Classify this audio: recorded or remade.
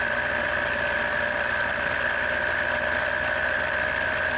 recorded